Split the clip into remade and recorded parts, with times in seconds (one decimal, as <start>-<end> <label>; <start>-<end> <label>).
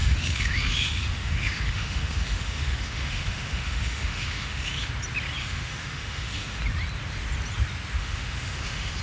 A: 0.0-4.9 remade; 4.9-5.4 recorded; 5.4-6.6 remade; 6.6-8.0 recorded; 8.0-9.0 remade